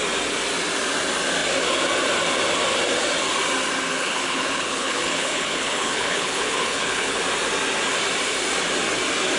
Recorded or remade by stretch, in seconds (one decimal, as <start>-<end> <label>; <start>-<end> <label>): 0.0-3.9 recorded; 3.9-7.2 remade; 7.2-9.4 recorded